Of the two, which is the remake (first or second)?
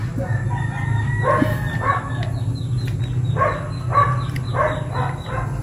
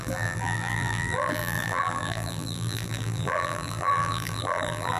second